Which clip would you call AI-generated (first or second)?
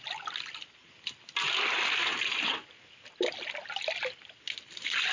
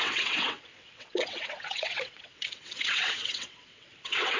second